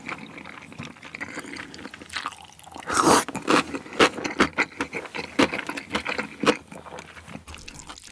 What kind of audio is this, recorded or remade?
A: recorded